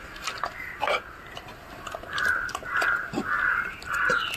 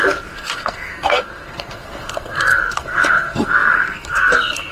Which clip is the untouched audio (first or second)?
first